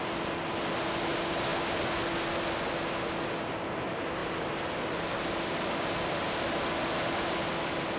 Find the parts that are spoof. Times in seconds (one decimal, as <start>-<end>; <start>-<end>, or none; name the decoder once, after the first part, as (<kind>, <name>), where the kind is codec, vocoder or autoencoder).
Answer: none